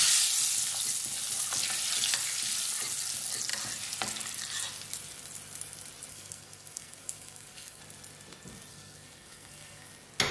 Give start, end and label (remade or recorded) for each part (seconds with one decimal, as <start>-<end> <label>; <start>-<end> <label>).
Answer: 0.0-6.1 recorded; 6.1-7.8 remade; 7.8-8.7 recorded; 8.7-9.9 remade; 9.9-10.3 recorded